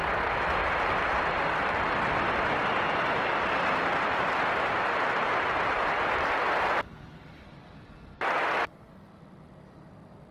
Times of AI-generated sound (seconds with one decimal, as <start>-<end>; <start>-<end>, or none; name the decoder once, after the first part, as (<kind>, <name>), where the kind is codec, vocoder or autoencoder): 0.7-10.3 (vocoder, BigVGAN v2)